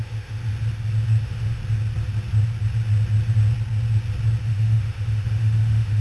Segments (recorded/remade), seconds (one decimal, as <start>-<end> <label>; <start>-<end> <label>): 0.0-0.4 remade; 0.4-1.2 recorded; 1.2-1.6 remade; 1.6-4.4 recorded; 4.4-6.0 remade